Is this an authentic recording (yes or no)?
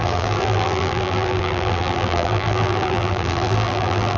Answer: no